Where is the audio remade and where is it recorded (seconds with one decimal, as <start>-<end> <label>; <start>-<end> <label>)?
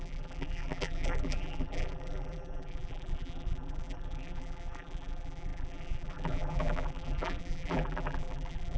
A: 0.0-8.8 remade